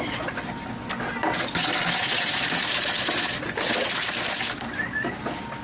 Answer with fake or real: real